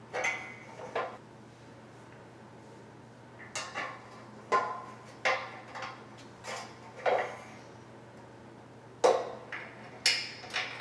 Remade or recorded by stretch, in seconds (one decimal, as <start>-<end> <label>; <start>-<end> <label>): 0.0-10.8 recorded